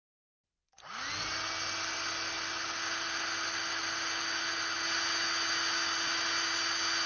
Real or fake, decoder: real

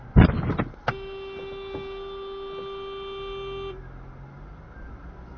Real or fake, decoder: real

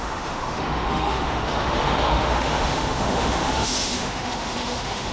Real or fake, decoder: fake, autoencoder, DAC-VAE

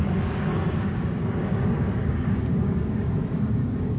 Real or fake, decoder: fake, codec, DAC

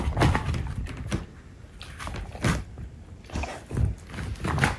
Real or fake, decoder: real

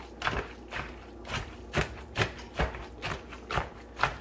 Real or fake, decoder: fake, vocoder, BigVGAN v2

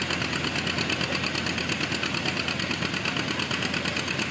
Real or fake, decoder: real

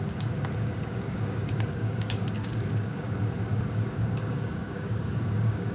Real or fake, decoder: fake, codec, DAC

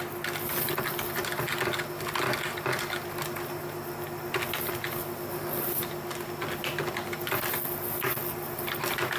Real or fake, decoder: real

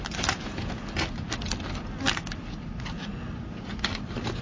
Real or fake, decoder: real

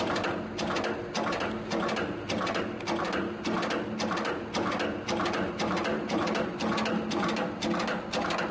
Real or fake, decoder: real